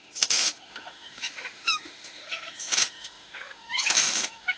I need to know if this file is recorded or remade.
remade